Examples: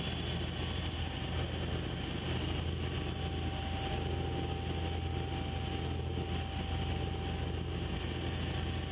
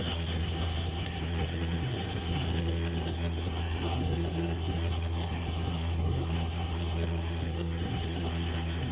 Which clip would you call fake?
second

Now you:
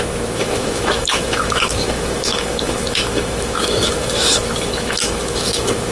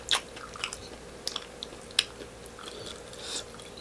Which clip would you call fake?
first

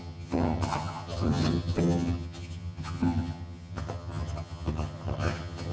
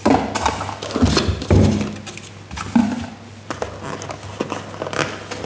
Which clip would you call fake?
first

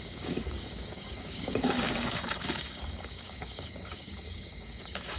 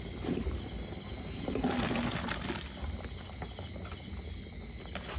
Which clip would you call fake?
first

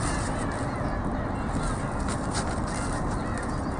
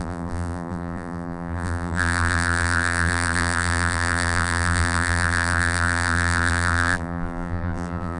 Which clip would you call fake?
second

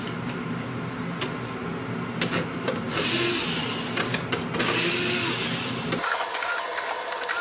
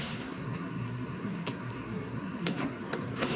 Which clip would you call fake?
second